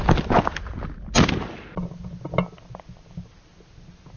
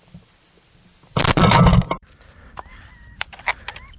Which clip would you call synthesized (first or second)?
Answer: second